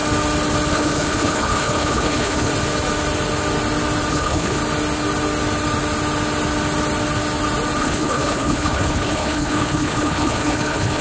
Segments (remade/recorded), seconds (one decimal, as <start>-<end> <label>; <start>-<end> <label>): 0.0-0.7 recorded; 0.7-2.5 remade; 2.5-4.1 recorded; 4.1-4.6 remade; 4.6-7.8 recorded; 7.8-11.0 remade